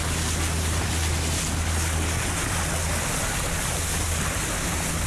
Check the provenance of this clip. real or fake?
real